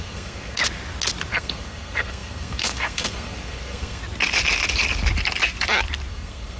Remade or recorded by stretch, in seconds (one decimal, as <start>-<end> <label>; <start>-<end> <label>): 0.0-0.6 remade; 0.6-1.3 recorded; 1.3-4.0 remade; 4.0-6.1 recorded; 6.1-6.6 remade